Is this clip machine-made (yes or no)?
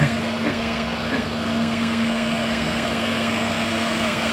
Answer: yes